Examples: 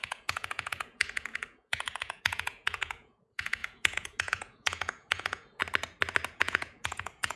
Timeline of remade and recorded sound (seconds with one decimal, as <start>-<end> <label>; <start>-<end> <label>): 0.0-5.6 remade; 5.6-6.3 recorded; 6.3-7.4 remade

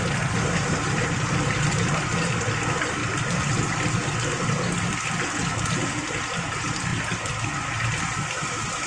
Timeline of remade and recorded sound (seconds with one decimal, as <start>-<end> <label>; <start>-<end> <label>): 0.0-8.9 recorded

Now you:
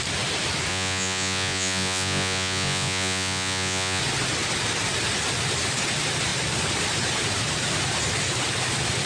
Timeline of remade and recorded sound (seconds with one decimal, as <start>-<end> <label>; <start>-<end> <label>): 0.0-0.7 recorded; 0.7-4.0 remade; 4.0-9.1 recorded